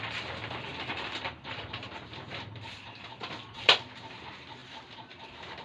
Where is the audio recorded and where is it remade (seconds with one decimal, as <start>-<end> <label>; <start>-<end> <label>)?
0.0-0.7 recorded; 0.7-4.1 remade; 4.1-4.6 recorded; 4.6-5.6 remade